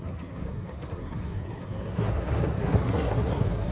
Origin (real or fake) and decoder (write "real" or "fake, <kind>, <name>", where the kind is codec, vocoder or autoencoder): fake, codec, SNAC